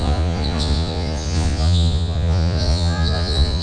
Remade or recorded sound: remade